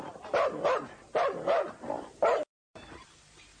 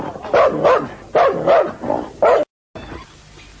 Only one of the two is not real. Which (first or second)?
first